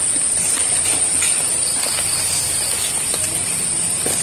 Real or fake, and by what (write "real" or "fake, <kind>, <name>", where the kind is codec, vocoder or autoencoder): real